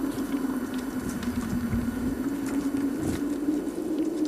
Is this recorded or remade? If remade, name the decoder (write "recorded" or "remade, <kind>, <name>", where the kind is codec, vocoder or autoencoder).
recorded